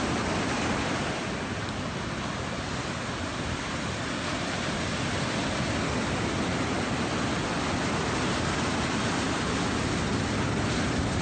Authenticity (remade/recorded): recorded